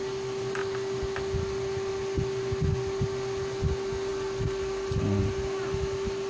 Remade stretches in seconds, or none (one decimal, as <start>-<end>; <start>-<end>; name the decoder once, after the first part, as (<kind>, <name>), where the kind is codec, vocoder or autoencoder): none

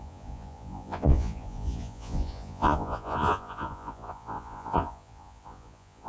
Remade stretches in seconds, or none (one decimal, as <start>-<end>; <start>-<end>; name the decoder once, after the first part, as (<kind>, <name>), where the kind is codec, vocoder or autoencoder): 0.0-6.1 (vocoder, Vocos)

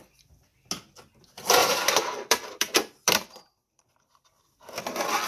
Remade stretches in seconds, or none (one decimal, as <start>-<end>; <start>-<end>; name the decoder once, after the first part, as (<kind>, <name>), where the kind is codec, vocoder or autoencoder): 1.6-4.8 (vocoder, BigVGAN v2)

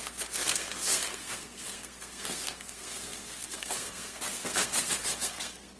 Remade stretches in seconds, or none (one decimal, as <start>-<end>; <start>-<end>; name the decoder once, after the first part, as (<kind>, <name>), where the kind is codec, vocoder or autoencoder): 0.0-5.8 (codec, SNAC)